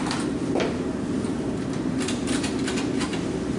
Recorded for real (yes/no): yes